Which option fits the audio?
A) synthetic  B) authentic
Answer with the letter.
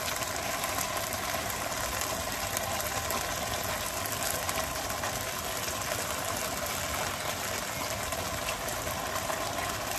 B